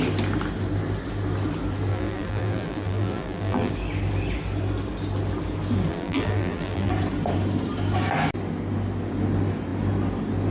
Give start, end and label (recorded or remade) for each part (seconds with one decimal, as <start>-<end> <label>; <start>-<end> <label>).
0.0-1.9 recorded; 1.9-3.7 remade; 3.7-5.9 recorded; 5.9-6.9 remade; 6.9-10.5 recorded